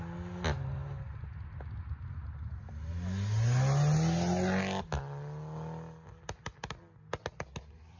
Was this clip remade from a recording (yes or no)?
no